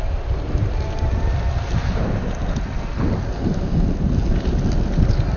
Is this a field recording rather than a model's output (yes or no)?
yes